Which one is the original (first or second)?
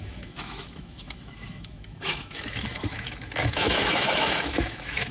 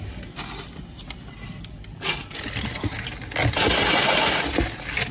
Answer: second